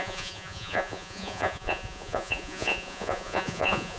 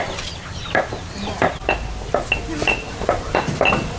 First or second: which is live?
second